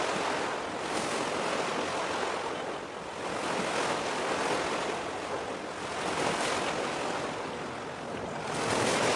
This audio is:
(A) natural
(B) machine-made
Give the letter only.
A